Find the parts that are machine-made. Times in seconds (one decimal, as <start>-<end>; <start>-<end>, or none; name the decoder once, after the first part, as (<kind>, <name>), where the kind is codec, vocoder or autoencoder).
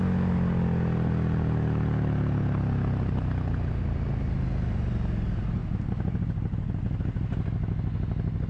none